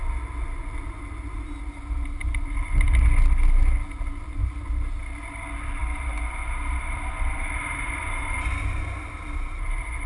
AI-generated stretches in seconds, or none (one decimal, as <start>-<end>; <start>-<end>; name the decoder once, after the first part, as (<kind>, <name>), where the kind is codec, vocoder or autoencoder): 5.8-10.1 (vocoder, BigVGAN v2)